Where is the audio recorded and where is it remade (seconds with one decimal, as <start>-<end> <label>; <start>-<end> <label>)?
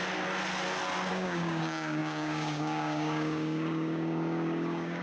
0.0-1.1 recorded; 1.1-5.0 remade